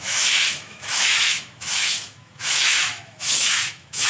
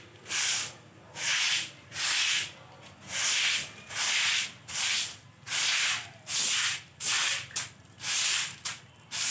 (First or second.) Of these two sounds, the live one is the second